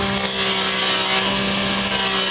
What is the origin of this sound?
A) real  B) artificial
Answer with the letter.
A